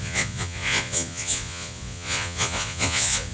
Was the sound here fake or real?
fake